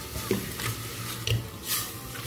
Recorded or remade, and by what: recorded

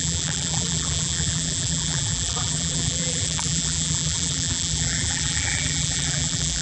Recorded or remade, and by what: remade, vocoder, BigVGAN v2